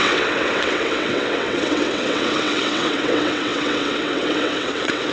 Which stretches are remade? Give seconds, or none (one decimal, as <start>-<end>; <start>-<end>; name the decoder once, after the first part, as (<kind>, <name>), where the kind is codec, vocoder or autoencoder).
0.0-5.1 (vocoder, WaveNeXt)